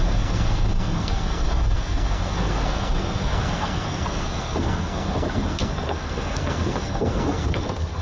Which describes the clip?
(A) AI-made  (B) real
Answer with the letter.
A